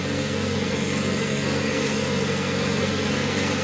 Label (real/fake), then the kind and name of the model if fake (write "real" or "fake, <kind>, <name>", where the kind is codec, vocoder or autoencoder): fake, codec, SNAC